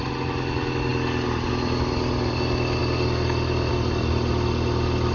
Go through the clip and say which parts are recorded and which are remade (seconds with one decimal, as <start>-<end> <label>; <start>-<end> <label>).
0.0-5.1 recorded